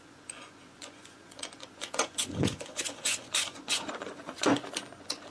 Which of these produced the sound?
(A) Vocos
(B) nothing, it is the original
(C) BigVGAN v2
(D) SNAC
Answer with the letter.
A